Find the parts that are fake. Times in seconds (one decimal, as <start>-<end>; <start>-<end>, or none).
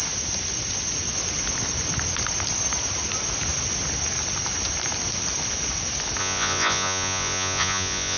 6.2-8.2